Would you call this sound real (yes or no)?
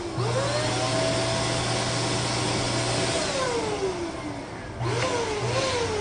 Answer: yes